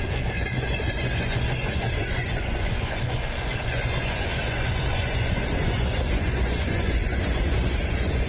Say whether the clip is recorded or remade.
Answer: remade